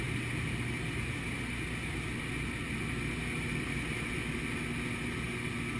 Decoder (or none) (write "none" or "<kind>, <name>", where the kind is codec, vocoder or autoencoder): none